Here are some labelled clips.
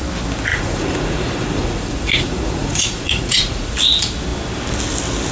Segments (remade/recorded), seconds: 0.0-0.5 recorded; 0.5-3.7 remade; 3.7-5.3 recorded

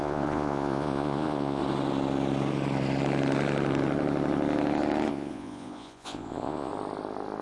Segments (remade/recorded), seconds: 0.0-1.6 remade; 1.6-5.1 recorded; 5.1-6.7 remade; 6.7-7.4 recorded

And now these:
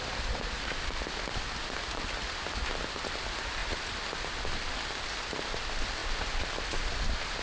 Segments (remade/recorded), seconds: 0.0-7.4 recorded